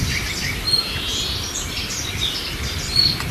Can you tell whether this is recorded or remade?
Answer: recorded